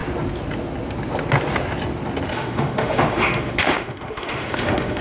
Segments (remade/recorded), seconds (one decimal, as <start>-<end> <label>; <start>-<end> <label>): 0.0-2.3 recorded; 2.3-5.0 remade